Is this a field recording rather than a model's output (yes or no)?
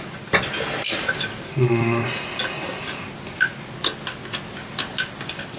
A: yes